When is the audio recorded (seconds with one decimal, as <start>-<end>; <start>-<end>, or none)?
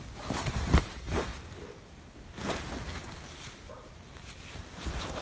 0.0-5.2